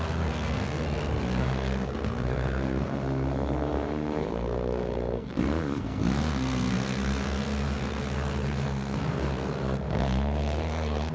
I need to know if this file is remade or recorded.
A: remade